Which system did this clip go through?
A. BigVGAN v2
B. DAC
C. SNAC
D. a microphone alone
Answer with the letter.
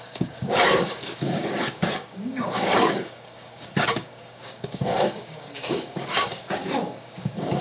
B